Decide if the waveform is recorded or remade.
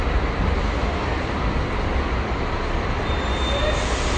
recorded